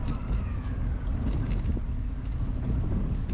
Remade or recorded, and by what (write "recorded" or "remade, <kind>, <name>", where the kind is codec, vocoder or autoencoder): recorded